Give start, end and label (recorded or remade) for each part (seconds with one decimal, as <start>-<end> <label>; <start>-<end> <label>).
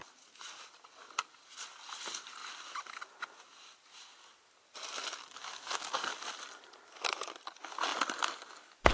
0.0-5.2 recorded; 5.2-6.1 remade; 6.1-8.9 recorded